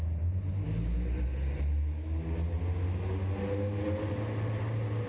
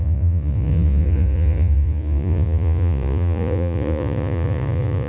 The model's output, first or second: second